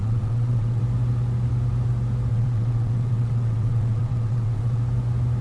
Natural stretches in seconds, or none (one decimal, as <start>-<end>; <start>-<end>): 0.8-2.3; 4.8-5.4